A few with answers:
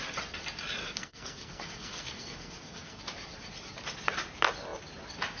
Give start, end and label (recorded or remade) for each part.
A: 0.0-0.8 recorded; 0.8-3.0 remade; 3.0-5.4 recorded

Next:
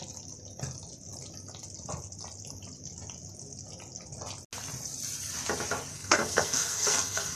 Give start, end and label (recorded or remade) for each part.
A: 0.0-5.9 recorded; 5.9-7.4 remade

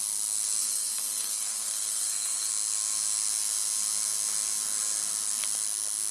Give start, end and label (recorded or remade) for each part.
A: 0.0-0.6 recorded; 0.6-2.5 remade; 2.5-6.1 recorded

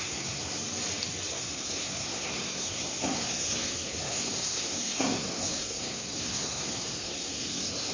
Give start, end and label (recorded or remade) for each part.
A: 0.0-0.6 remade; 0.6-1.3 recorded; 1.3-7.9 remade

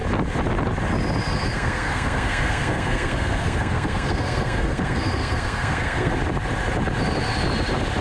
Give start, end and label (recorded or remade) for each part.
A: 0.0-1.3 recorded; 1.3-6.1 remade; 6.1-8.0 recorded

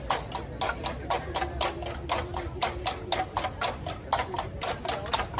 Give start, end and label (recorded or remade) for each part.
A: 0.0-5.4 recorded